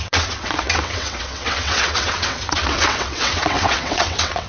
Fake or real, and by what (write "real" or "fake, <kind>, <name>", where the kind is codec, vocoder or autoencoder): fake, vocoder, WaveNeXt